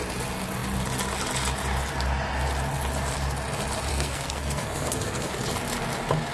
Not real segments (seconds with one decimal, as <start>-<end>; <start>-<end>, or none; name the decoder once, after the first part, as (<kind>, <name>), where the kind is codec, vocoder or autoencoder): 3.9-5.3 (codec, SNAC)